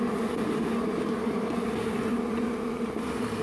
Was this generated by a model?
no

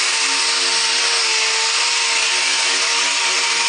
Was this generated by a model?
no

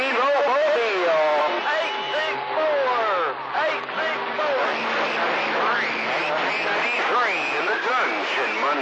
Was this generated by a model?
no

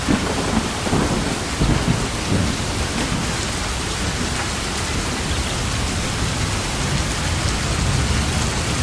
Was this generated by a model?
no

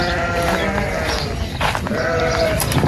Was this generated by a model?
no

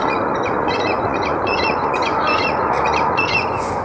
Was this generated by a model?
yes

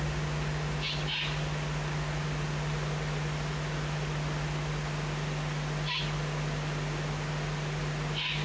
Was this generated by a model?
no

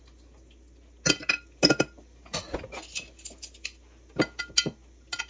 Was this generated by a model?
no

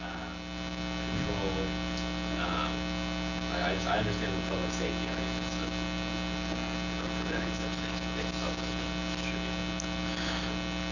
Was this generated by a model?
no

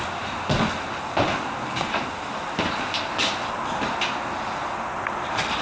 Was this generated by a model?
no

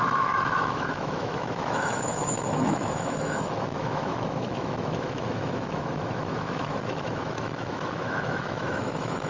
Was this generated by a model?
yes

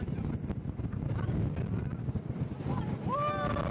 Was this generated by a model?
no